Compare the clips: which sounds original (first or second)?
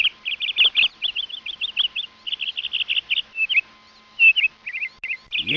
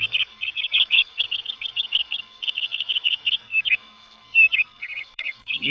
first